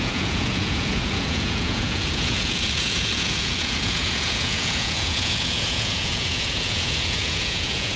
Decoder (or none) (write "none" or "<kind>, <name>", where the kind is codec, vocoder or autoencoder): vocoder, Vocos